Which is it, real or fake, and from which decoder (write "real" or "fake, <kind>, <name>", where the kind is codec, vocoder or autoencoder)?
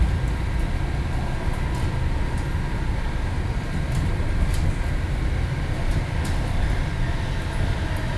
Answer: real